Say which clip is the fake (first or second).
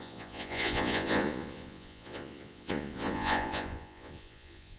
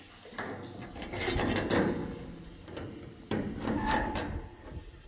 first